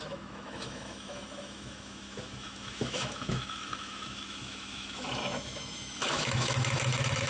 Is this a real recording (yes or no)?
no